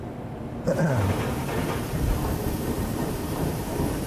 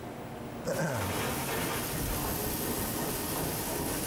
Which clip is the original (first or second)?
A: second